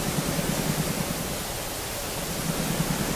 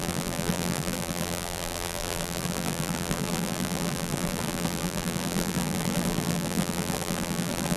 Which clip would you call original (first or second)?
first